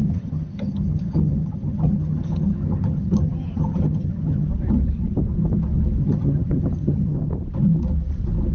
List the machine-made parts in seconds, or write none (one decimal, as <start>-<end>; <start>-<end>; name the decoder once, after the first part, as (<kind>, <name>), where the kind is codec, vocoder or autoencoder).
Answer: 0.0-4.5 (vocoder, HiFi-GAN); 6.0-7.3